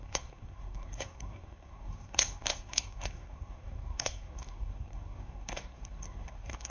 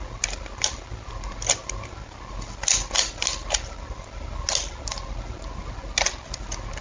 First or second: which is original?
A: second